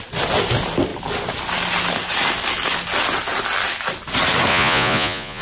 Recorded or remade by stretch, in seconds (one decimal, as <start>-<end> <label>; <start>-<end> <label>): 0.0-4.5 recorded; 4.5-5.4 remade